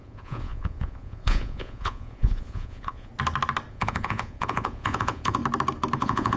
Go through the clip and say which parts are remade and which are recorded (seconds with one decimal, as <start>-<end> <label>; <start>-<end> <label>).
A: 0.0-3.1 remade; 3.1-3.7 recorded; 3.7-5.4 remade; 5.4-6.0 recorded; 6.0-6.4 remade